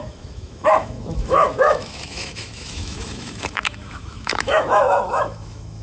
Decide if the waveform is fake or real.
fake